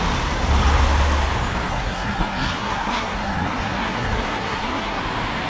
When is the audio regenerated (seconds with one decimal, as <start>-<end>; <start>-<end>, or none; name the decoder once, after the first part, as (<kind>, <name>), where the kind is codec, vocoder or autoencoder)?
1.7-5.0 (codec, SNAC)